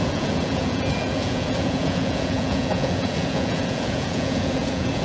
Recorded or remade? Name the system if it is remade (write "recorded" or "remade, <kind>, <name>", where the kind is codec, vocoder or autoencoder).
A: remade, vocoder, Vocos